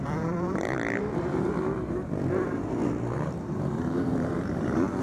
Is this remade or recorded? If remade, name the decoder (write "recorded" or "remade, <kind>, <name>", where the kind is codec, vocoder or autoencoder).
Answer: remade, vocoder, BigVGAN v2